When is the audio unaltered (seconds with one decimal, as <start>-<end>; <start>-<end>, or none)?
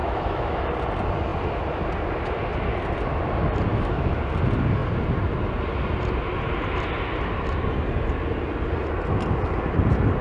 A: 0.6-3.7; 4.2-10.2